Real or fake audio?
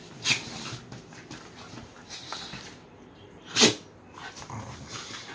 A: real